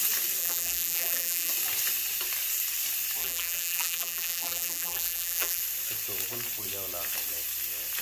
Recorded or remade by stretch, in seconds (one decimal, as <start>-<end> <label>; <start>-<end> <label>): 0.0-0.4 recorded; 0.4-1.5 remade; 1.5-3.2 recorded; 3.2-5.6 remade; 5.6-8.0 recorded